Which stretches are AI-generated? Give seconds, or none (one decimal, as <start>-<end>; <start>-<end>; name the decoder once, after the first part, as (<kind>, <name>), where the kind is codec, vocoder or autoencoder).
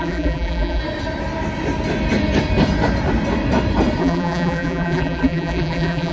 0.0-0.8 (vocoder, BigVGAN v2); 4.0-6.1